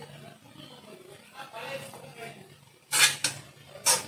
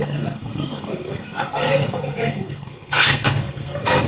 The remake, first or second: second